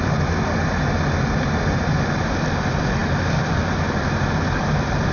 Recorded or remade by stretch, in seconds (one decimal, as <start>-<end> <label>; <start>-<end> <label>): 0.0-3.0 recorded; 3.0-3.8 remade; 3.8-5.1 recorded